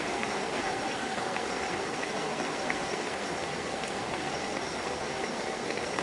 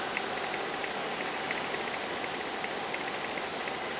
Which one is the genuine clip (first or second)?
second